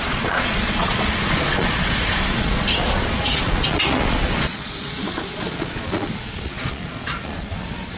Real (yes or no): no